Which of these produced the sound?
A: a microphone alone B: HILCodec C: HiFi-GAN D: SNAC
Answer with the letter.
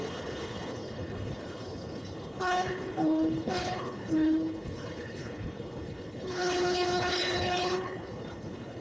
B